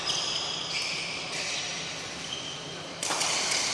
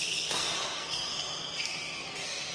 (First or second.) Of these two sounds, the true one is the first